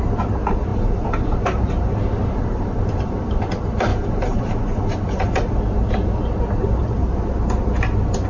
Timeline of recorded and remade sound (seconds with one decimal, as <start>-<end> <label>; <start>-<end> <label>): 0.0-0.7 recorded; 0.7-3.4 remade; 3.4-3.9 recorded; 3.9-5.6 remade; 5.6-6.8 recorded; 6.8-7.4 remade; 7.4-8.3 recorded